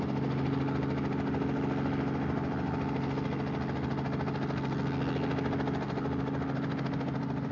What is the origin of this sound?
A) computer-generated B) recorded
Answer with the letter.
B